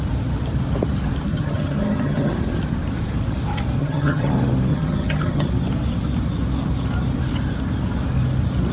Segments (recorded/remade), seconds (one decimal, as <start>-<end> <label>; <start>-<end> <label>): 0.0-1.3 recorded; 1.3-2.3 remade; 2.3-3.8 recorded; 3.8-4.3 remade; 4.3-4.7 recorded; 4.7-5.5 remade; 5.5-8.7 recorded